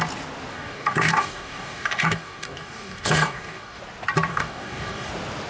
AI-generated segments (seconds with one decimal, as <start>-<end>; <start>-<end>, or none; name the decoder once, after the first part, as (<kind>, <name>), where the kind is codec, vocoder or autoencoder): 0.5-3.8 (codec, DAC); 4.3-5.1